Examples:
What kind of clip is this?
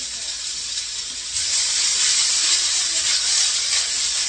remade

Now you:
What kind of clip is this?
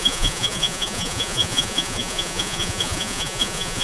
remade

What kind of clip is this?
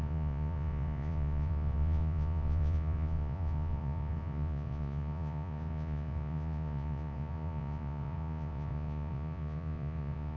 remade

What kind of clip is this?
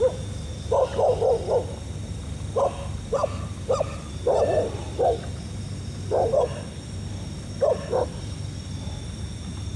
recorded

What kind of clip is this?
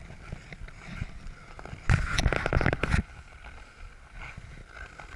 recorded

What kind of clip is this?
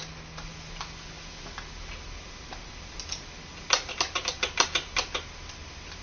recorded